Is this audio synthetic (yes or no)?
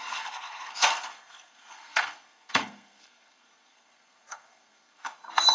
yes